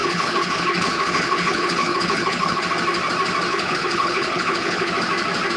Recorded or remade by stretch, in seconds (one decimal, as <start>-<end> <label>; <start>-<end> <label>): 0.0-2.6 remade; 2.6-3.5 recorded; 3.5-4.9 remade; 4.9-5.6 recorded